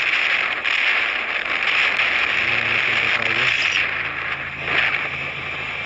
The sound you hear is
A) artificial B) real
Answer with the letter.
B